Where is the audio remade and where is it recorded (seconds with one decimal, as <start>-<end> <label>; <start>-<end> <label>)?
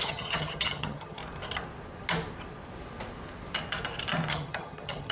0.0-1.2 remade; 1.2-4.3 recorded; 4.3-5.1 remade